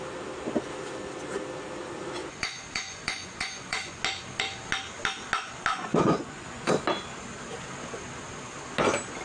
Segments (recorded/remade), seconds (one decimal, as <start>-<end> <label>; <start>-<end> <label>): 0.0-2.2 recorded; 2.2-4.0 remade; 4.0-5.7 recorded; 5.7-6.7 remade; 6.7-9.2 recorded